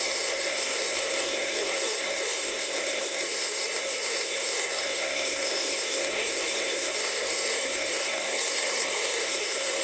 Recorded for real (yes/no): no